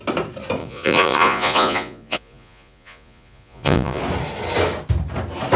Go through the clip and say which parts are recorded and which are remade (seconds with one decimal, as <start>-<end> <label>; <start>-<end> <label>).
0.0-0.6 recorded; 0.6-4.0 remade; 4.0-5.6 recorded